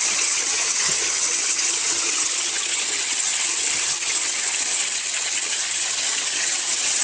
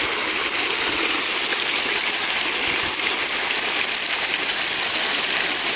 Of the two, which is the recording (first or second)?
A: second